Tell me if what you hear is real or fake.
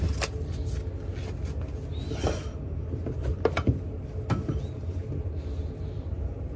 real